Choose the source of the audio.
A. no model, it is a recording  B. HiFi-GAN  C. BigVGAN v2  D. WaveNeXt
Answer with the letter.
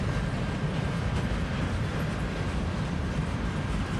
C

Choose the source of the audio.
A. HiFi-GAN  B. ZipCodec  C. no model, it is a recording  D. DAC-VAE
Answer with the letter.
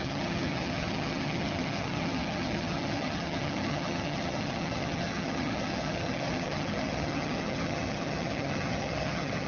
A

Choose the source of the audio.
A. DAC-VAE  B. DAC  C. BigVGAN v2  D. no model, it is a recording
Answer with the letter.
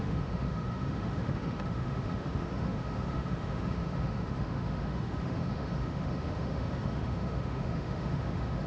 A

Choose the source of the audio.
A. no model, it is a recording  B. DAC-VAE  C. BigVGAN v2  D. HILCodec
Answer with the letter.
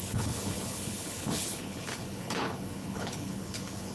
D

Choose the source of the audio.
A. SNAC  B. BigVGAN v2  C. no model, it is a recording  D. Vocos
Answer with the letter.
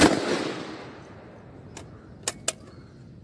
C